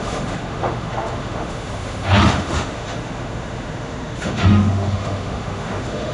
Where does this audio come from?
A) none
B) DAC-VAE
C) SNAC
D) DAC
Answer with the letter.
B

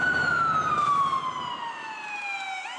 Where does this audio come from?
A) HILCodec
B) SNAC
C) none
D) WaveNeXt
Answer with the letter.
C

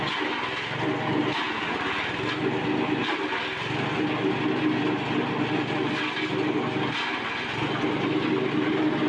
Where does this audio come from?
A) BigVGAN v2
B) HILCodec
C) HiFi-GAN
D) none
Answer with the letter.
D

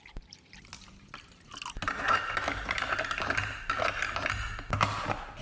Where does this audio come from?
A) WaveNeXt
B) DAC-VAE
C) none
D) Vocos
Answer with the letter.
C